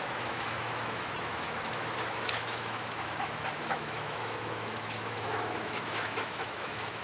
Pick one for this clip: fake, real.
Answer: fake